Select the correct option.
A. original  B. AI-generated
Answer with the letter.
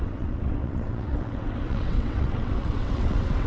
B